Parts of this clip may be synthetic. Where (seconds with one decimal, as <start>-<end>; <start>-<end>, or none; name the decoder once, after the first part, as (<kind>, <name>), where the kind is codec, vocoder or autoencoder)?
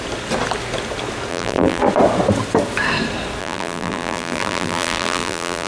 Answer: 1.3-1.8 (vocoder, BigVGAN v2); 3.4-5.7